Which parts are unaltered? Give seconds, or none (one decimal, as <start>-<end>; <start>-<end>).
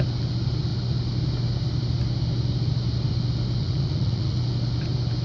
0.0-3.6; 4.4-5.2